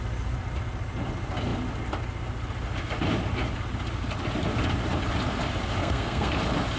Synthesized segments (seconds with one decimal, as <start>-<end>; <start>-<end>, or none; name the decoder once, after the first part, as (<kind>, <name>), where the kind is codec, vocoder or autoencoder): 5.8-6.3 (codec, SNAC)